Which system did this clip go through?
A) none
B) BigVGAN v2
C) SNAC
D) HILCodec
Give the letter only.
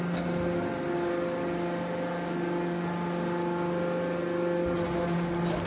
A